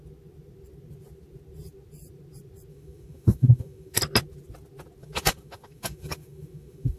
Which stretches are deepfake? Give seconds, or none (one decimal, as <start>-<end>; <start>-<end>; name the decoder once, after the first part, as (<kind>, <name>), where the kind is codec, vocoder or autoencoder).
2.7-4.0 (autoencoder, DAC-VAE); 5.0-7.0